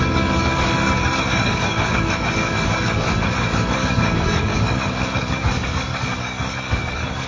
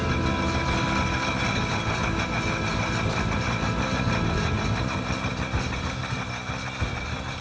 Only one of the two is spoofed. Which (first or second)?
first